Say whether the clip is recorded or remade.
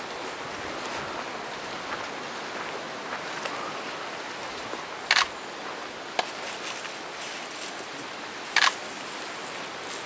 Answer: recorded